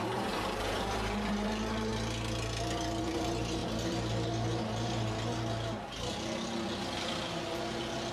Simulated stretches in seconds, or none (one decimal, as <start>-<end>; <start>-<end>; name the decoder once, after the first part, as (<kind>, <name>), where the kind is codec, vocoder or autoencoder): 0.0-1.9 (vocoder, BigVGAN v2); 3.0-3.6